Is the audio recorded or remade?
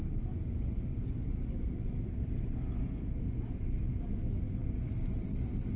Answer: recorded